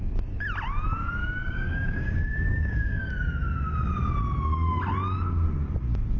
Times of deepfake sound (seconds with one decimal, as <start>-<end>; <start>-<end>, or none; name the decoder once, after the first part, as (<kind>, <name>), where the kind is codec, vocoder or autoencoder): 1.2-3.1 (codec, DAC)